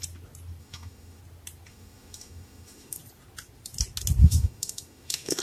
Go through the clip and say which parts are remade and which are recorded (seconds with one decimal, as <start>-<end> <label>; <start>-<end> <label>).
0.0-0.6 recorded; 0.6-1.2 remade; 1.2-1.7 recorded; 1.7-3.0 remade; 3.0-4.2 recorded; 4.2-5.4 remade